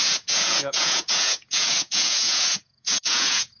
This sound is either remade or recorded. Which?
remade